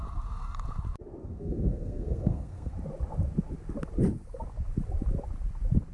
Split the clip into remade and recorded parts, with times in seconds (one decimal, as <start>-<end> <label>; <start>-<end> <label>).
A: 0.0-1.2 recorded; 1.2-2.7 remade; 2.7-5.9 recorded